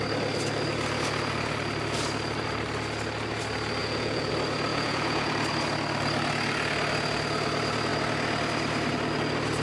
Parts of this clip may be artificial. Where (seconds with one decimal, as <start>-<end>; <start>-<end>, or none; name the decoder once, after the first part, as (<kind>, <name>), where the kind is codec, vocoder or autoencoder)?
3.8-4.3 (vocoder, Vocos); 4.7-5.3